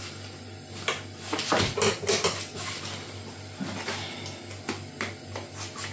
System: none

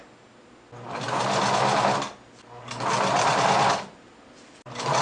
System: none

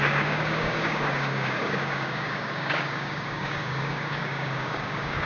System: codec, DAC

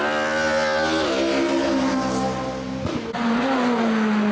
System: none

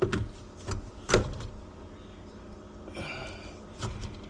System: none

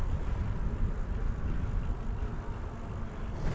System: none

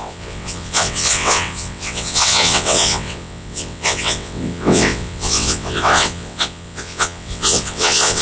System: vocoder, WaveNeXt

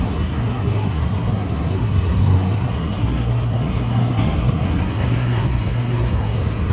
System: codec, SNAC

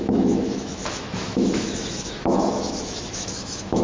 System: autoencoder, DAC-VAE